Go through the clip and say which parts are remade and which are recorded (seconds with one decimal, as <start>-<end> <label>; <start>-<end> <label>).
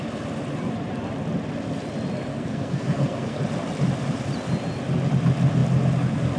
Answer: 0.0-2.3 recorded; 2.3-3.4 remade; 3.4-6.4 recorded